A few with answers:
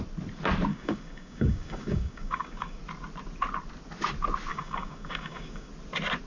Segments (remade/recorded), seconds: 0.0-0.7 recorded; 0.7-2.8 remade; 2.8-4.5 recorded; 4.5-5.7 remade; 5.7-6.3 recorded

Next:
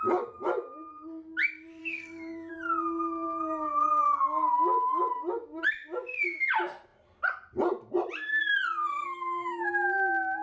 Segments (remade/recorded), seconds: 0.0-1.8 recorded; 1.8-2.5 remade; 2.5-8.9 recorded; 8.9-9.7 remade; 9.7-10.4 recorded

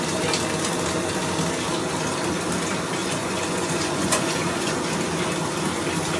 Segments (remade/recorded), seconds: 0.0-3.0 recorded; 3.0-4.8 remade; 4.8-6.2 recorded

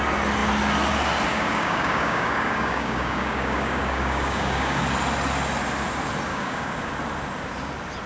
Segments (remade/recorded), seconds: 0.0-1.3 recorded; 1.3-4.8 remade; 4.8-6.3 recorded; 6.3-6.9 remade; 6.9-8.1 recorded

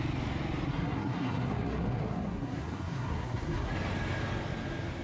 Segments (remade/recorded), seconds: 0.0-0.7 recorded; 0.7-3.7 remade; 3.7-5.0 recorded

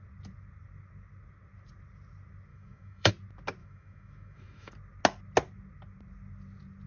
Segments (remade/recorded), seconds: 0.0-2.5 recorded; 2.5-3.1 remade; 3.1-3.6 recorded; 3.6-4.7 remade; 4.7-6.9 recorded

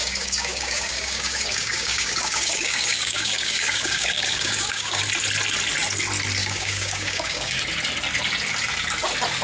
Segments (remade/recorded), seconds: 0.0-5.0 remade; 5.0-6.4 recorded; 6.4-7.6 remade; 7.6-9.4 recorded